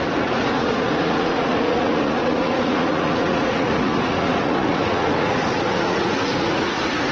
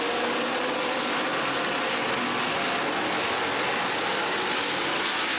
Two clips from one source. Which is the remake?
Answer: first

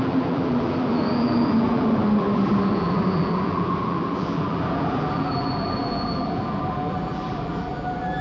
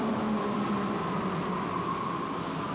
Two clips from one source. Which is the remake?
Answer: first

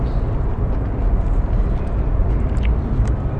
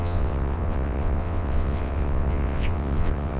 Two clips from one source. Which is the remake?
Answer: second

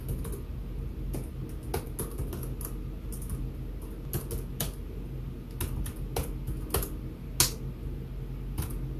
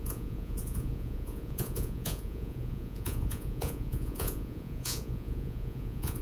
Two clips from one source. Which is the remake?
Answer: second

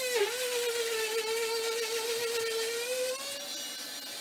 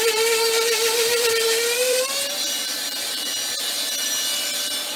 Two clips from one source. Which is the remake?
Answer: second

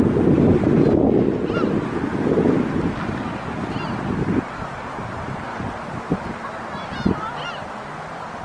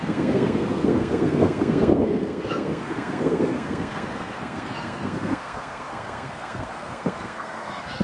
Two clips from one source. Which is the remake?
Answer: second